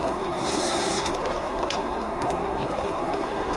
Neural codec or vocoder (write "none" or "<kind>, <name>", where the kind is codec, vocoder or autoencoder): codec, SNAC